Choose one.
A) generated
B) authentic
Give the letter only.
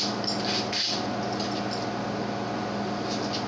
B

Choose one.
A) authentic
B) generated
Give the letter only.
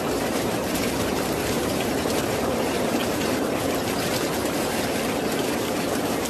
B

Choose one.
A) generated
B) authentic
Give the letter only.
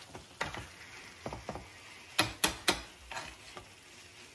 B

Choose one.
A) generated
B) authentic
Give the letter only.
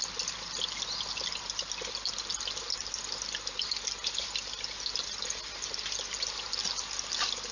B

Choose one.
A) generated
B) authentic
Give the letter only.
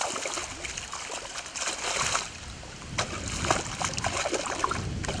B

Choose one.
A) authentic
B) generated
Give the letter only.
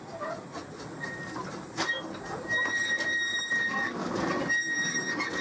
A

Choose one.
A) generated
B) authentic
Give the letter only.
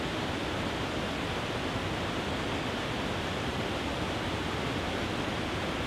B